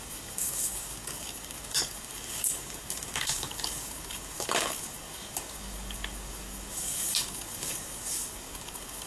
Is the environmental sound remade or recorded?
remade